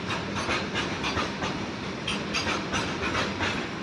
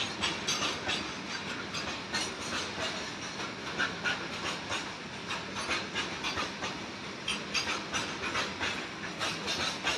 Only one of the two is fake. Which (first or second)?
first